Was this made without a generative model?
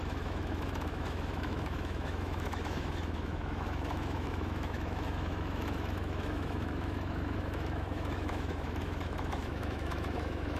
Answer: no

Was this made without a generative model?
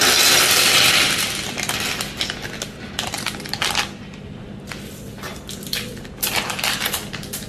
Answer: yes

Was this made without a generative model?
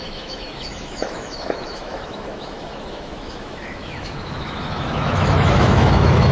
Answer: no